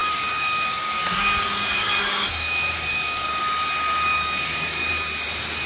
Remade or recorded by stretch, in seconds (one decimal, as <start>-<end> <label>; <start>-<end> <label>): 0.0-3.4 remade; 3.4-4.1 recorded; 4.1-4.9 remade; 4.9-5.7 recorded